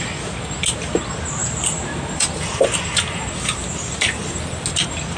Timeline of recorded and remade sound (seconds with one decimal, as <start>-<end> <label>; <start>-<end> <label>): 0.0-1.4 recorded; 1.4-4.5 remade; 4.5-5.2 recorded